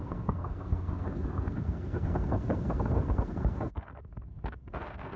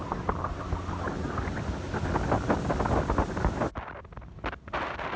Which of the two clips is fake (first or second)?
first